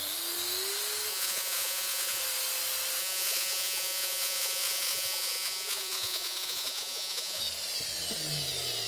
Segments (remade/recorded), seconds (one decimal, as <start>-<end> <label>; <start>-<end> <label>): 0.0-1.1 recorded; 1.1-2.2 remade; 2.2-3.0 recorded; 3.0-7.4 remade; 7.4-8.9 recorded